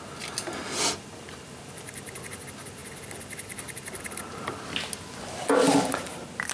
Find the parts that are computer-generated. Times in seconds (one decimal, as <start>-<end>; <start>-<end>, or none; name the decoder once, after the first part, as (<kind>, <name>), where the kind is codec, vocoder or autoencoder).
none